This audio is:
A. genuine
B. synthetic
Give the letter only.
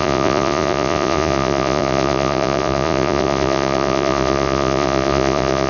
B